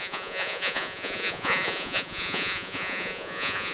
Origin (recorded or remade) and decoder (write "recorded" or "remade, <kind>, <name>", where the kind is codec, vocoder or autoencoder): remade, vocoder, Vocos